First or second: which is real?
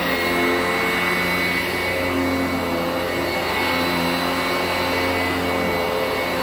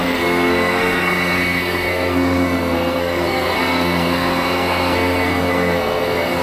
first